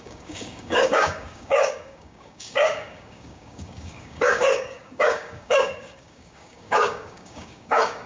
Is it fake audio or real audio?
fake